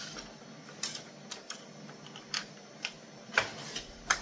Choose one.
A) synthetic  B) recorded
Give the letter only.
B